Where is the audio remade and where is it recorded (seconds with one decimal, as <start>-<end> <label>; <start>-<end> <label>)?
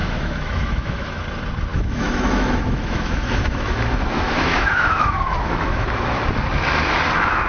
0.0-1.2 remade; 1.2-1.7 recorded; 1.7-6.2 remade; 6.2-7.5 recorded